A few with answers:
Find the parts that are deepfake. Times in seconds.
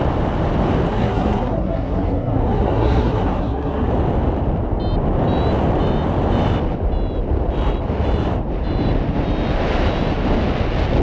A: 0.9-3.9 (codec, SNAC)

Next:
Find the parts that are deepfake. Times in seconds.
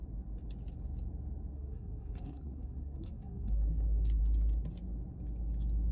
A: 1.5-4.2 (codec, SNAC)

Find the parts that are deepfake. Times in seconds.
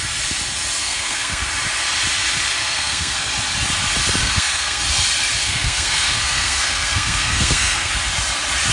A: 0.8-1.4 (codec, SNAC); 2.6-3.3; 4.2-4.8; 5.4-7.9